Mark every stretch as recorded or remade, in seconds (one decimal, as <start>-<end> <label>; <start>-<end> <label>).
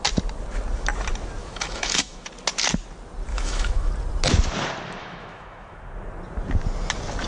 0.0-1.4 recorded; 1.4-2.3 remade; 2.3-3.3 recorded; 3.3-3.9 remade; 3.9-5.0 recorded; 5.0-5.8 remade; 5.8-7.3 recorded